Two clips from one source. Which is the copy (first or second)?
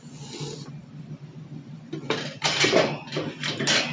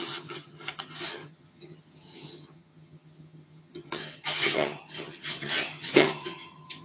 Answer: second